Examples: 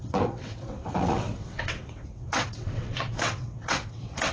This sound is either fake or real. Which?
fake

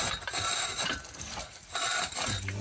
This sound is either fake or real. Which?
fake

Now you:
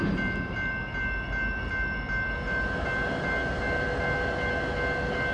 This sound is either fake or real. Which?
real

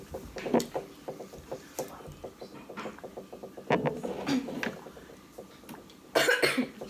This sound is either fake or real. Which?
real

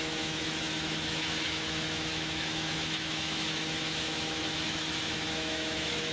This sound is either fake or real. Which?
fake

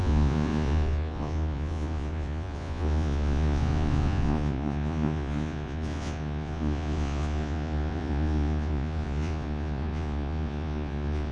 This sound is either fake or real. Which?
fake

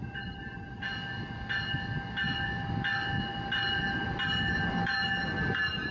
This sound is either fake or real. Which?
real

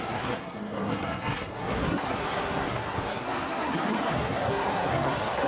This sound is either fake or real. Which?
fake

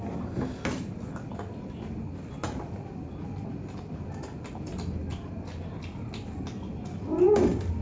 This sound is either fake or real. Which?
real